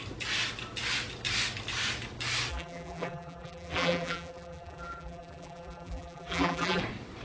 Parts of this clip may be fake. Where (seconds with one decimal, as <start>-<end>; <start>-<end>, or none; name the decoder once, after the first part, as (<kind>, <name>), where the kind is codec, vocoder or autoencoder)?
2.5-6.8 (vocoder, BigVGAN v2)